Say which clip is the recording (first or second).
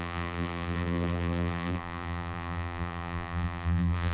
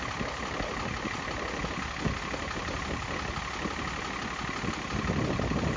second